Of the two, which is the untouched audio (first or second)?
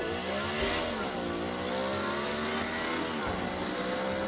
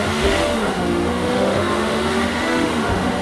first